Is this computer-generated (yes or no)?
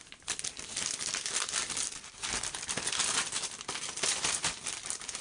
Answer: no